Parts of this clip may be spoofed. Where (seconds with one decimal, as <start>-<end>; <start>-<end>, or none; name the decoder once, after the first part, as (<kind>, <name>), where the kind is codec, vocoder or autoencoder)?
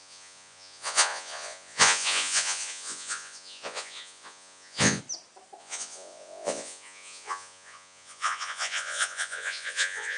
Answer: 0.0-5.0 (vocoder, Vocos); 5.6-10.2